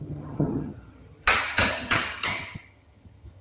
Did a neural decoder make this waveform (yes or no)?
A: yes